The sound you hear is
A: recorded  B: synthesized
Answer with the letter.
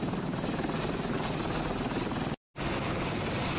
A